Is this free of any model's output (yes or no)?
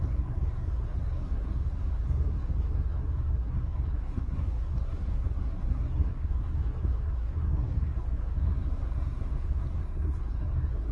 no